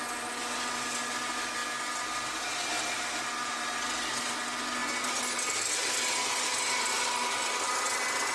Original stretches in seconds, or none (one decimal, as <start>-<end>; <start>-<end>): 0.0-8.3